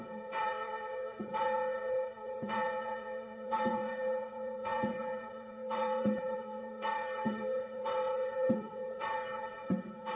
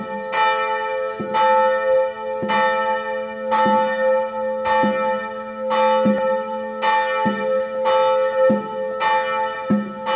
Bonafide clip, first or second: second